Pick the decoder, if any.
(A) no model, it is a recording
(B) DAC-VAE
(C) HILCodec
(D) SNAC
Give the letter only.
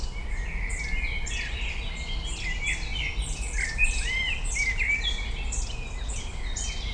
A